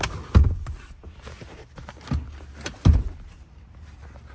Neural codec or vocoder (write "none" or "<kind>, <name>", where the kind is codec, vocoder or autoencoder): none